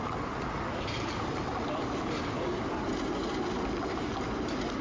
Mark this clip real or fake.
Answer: real